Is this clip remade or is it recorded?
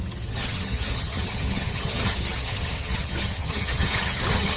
remade